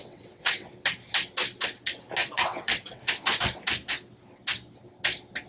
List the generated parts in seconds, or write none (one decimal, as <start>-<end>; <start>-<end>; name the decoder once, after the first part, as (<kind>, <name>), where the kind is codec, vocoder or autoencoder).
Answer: 0.0-0.7 (vocoder, WaveNeXt); 2.2-3.0